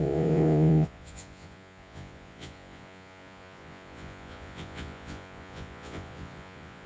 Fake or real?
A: fake